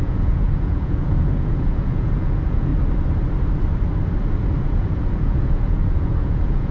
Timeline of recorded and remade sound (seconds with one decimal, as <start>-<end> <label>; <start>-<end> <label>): 0.0-2.7 remade; 2.7-4.6 recorded; 4.6-6.7 remade